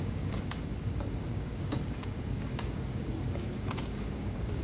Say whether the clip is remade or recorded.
remade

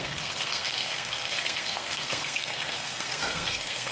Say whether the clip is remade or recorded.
remade